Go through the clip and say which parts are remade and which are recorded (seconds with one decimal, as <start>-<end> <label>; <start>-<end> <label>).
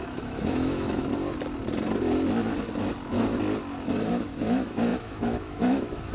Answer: 0.0-1.1 remade; 1.1-4.1 recorded; 4.1-6.1 remade